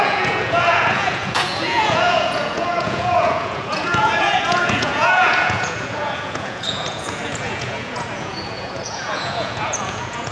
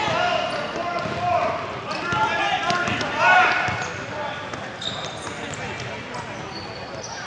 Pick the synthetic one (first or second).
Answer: first